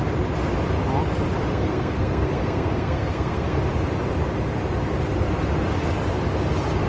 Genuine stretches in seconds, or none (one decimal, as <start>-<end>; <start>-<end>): 0.0-1.5; 3.6-6.9

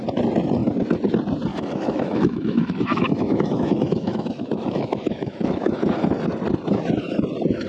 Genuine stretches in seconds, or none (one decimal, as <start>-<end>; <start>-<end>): 0.0-1.5; 5.8-7.7